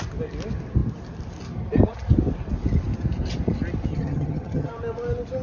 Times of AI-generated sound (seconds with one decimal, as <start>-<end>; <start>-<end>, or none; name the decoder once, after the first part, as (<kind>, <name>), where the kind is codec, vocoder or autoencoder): 3.9-4.7 (vocoder, HiFi-GAN)